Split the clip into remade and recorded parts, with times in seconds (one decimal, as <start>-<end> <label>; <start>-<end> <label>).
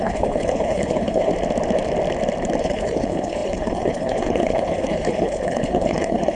0.0-1.3 remade; 1.3-2.6 recorded; 2.6-6.3 remade